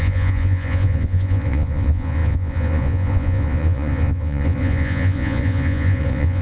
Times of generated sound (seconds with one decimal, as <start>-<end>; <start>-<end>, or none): 0.0-6.4